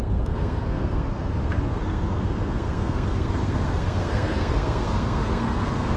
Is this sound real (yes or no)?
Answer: no